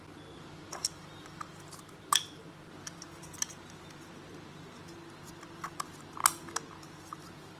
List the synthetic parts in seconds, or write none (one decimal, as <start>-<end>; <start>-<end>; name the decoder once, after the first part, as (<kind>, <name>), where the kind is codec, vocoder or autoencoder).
none